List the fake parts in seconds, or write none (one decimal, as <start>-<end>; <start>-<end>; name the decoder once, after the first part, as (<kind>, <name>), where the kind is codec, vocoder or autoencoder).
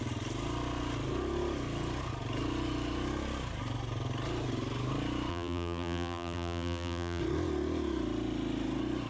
5.3-7.2 (vocoder, BigVGAN v2)